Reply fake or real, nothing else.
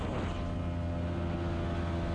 real